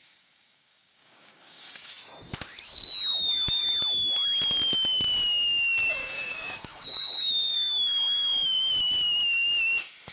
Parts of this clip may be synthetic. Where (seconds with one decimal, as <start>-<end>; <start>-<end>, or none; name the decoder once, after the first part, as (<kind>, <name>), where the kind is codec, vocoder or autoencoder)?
0.0-2.3 (codec, DAC); 3.1-3.7; 6.0-8.7